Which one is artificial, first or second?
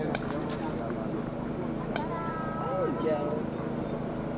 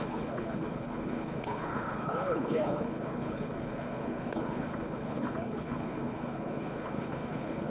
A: second